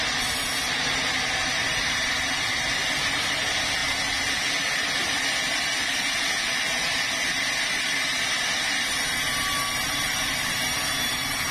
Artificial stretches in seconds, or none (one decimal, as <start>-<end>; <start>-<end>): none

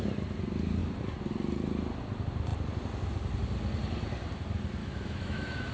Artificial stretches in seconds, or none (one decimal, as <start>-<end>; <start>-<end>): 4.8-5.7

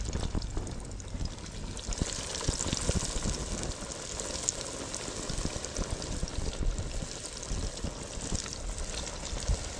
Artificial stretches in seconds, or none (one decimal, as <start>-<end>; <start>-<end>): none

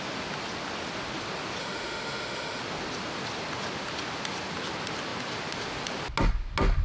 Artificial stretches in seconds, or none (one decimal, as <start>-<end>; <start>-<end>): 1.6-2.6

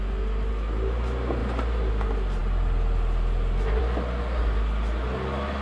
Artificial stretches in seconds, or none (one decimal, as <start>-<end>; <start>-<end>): none

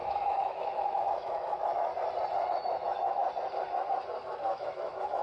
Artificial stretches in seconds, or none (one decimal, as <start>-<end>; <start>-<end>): 0.0-1.9; 2.5-3.2; 4.5-5.2

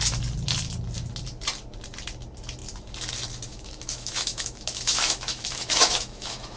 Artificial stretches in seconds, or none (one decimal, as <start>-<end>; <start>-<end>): 3.5-6.6

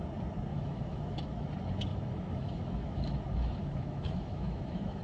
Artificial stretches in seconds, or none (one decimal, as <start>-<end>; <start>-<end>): 0.5-1.5; 1.9-5.0